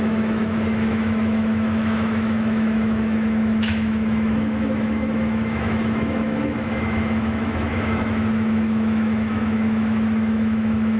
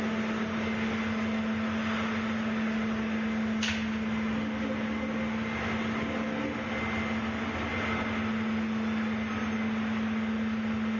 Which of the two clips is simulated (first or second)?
first